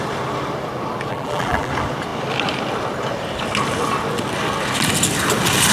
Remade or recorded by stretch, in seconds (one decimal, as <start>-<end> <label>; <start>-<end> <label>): 0.0-1.1 recorded; 1.1-1.7 remade; 1.7-5.7 recorded